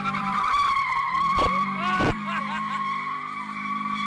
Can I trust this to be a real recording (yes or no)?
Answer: no